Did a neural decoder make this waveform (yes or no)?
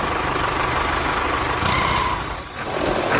no